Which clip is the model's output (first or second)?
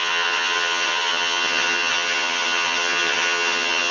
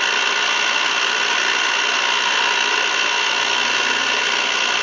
first